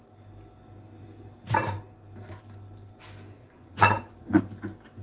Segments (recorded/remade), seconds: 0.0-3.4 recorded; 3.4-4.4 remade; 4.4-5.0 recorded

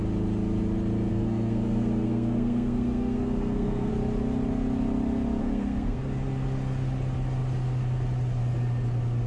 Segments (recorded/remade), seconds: 0.0-1.1 recorded; 1.1-3.9 remade; 3.9-5.4 recorded; 5.4-6.0 remade; 6.0-9.3 recorded

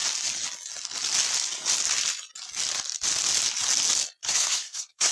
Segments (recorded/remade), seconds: 0.0-4.2 recorded; 4.2-5.1 remade

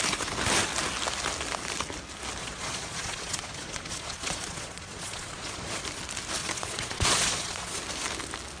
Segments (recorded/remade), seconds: 0.0-2.4 recorded; 2.4-5.8 remade; 5.8-6.4 recorded; 6.4-7.8 remade; 7.8-8.6 recorded